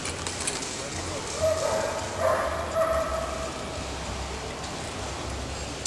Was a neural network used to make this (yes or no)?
no